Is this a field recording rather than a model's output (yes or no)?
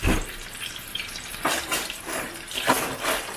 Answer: yes